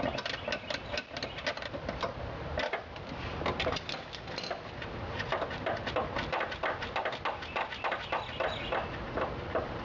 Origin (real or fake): real